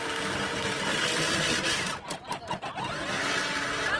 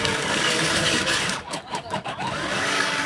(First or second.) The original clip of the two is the first